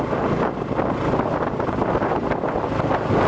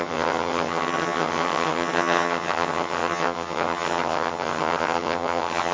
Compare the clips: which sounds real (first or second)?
first